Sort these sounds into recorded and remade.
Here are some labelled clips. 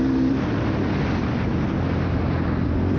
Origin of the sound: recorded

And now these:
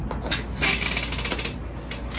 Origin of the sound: recorded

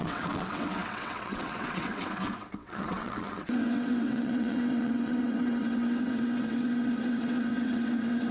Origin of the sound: remade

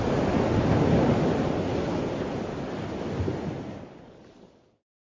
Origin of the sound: recorded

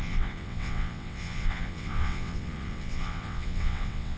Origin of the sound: remade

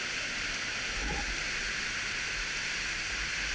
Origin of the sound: recorded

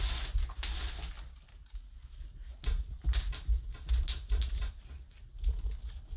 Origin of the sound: recorded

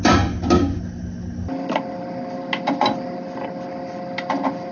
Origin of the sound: recorded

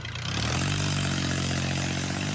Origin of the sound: recorded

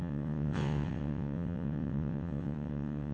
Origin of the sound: remade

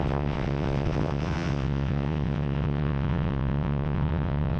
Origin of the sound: remade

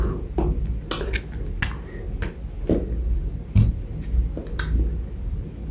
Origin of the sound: recorded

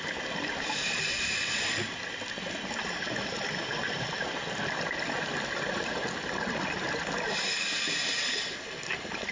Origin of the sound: recorded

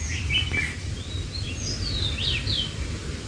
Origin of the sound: recorded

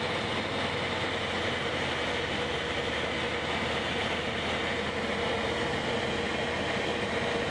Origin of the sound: recorded